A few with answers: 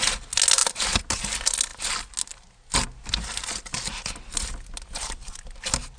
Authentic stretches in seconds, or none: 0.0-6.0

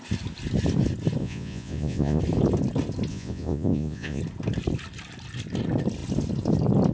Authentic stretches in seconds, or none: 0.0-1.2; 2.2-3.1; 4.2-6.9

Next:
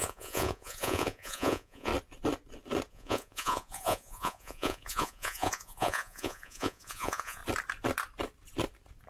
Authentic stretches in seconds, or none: 1.9-2.9; 7.4-9.1

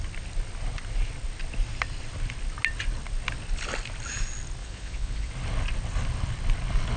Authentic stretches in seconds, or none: 0.0-4.6; 5.3-7.0

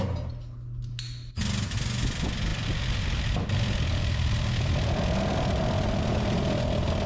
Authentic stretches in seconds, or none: 0.0-7.1

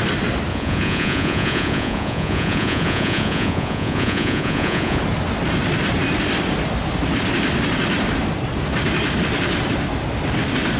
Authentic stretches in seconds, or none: 0.0-0.5; 5.0-10.8